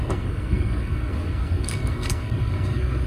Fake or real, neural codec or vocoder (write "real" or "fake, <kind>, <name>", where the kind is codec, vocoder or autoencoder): fake, codec, SNAC